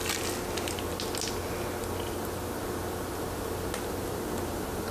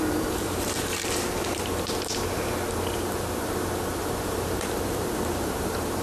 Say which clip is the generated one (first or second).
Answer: second